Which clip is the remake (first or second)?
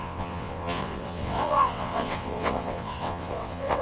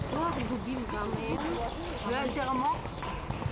first